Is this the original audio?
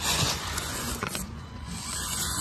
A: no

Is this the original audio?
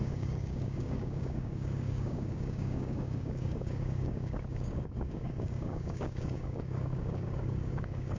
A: no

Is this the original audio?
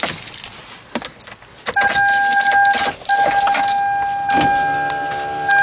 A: yes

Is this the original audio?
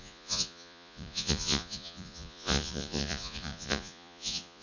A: no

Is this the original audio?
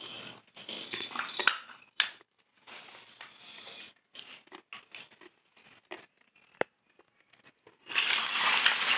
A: yes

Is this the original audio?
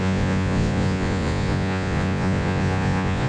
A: no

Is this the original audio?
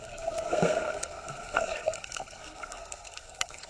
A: no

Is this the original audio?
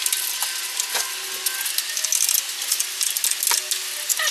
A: yes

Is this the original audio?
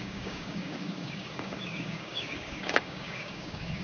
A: no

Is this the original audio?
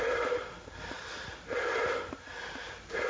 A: yes